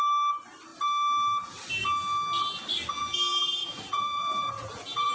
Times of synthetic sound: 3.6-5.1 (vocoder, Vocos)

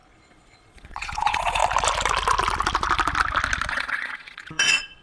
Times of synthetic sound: 0.0-1.6 (vocoder, Vocos); 3.7-5.0

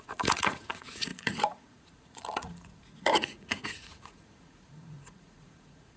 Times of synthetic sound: 0.0-6.0 (vocoder, Vocos)

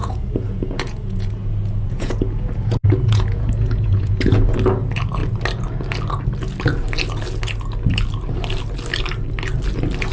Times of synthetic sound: 0.0-4.5 (vocoder, Vocos)

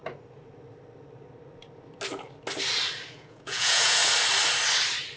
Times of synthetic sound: 3.1-4.0 (vocoder, Vocos)

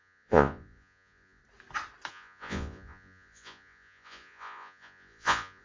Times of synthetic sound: 0.0-1.4 (vocoder, Vocos); 2.1-5.6

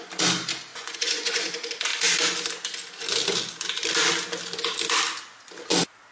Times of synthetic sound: 0.7-1.5 (vocoder, Vocos)

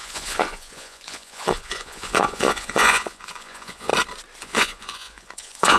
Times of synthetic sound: 0.0-3.9 (vocoder, Vocos); 4.4-5.8